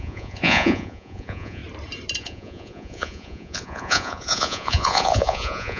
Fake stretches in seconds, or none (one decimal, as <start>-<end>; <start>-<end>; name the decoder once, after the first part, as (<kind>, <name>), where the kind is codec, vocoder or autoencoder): 0.0-1.6 (vocoder, Vocos); 2.2-5.8